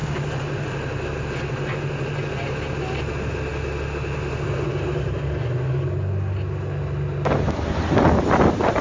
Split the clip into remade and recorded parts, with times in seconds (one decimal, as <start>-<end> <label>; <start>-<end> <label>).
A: 0.0-8.8 recorded